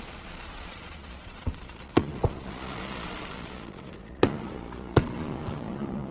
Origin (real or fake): fake